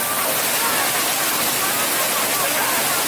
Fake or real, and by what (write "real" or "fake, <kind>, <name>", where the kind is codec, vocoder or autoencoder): real